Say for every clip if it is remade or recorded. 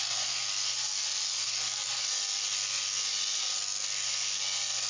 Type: recorded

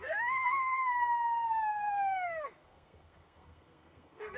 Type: remade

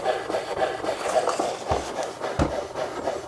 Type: recorded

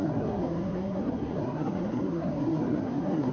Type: remade